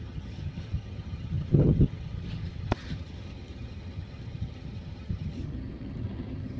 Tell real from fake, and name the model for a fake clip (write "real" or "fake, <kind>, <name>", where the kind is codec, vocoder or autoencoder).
fake, vocoder, HiFi-GAN